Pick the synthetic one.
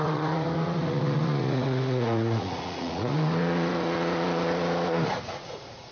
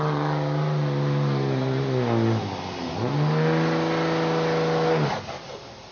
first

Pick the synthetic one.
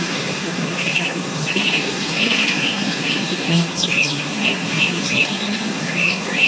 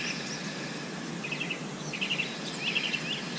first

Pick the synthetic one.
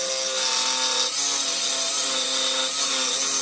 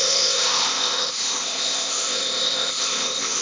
second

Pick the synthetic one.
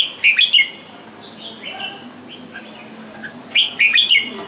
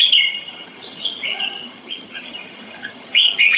second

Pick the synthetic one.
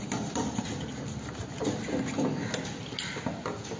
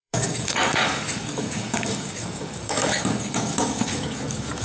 second